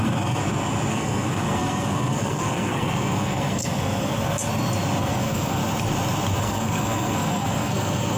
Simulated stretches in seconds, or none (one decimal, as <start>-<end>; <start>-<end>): 0.0-0.4; 0.9-4.5; 5.0-5.6; 6.4-8.2